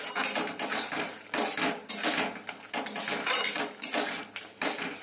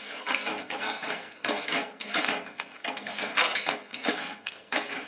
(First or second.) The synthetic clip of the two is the second